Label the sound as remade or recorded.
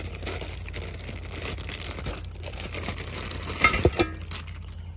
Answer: recorded